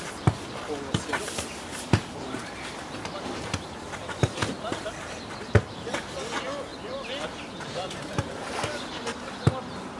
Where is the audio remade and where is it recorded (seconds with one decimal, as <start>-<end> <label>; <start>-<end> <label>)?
0.0-1.7 recorded; 1.7-4.0 remade; 4.0-6.7 recorded; 6.7-7.5 remade; 7.5-10.0 recorded